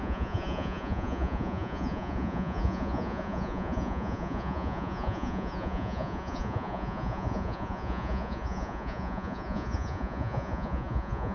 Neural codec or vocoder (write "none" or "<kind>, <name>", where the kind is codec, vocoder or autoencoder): vocoder, Vocos